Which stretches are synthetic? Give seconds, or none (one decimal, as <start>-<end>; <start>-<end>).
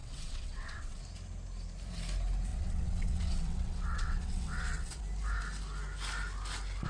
0.0-1.0; 2.5-5.0